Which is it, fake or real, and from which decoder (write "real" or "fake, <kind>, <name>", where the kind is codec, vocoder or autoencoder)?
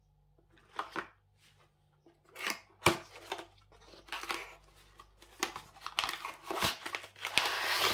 real